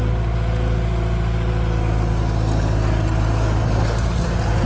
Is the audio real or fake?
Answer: real